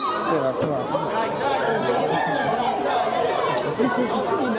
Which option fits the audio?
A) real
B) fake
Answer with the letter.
A